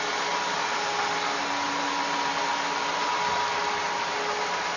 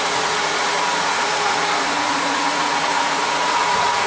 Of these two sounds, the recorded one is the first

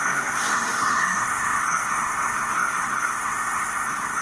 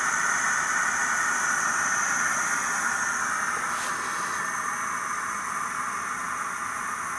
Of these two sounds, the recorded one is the second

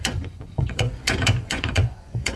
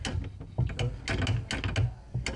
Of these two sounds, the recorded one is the second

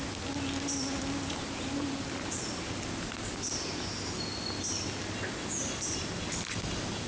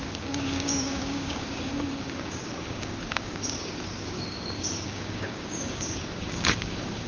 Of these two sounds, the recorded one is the first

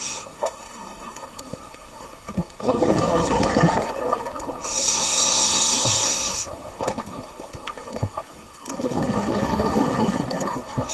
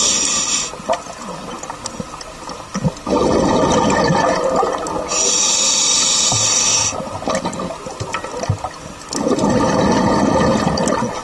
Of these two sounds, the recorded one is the second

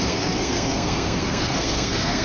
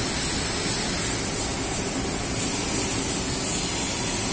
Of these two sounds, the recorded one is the second